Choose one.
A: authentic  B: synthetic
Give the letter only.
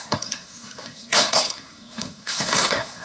B